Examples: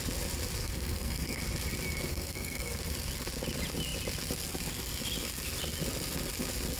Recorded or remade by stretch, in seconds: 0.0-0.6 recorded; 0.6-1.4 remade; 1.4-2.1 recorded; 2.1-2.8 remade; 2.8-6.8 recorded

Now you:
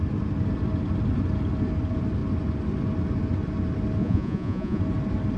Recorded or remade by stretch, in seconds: 0.0-4.0 recorded; 4.0-4.8 remade; 4.8-5.4 recorded

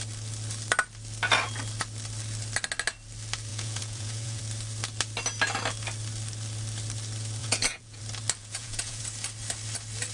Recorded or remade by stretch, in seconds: 0.0-3.5 recorded; 3.5-4.4 remade; 4.4-7.4 recorded; 7.4-8.0 remade; 8.0-8.4 recorded; 8.4-9.0 remade; 9.0-10.1 recorded

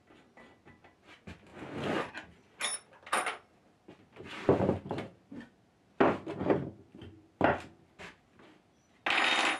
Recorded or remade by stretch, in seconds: 0.0-9.6 recorded

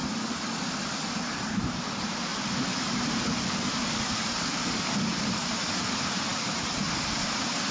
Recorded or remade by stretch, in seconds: 0.0-1.4 recorded; 1.4-2.3 remade; 2.3-5.2 recorded; 5.2-7.7 remade